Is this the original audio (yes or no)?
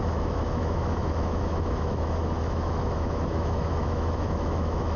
no